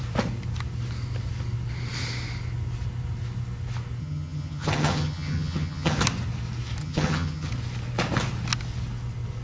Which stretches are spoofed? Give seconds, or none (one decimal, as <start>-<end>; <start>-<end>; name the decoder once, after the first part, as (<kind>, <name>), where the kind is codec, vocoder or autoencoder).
4.0-6.0 (vocoder, HiFi-GAN); 6.8-7.5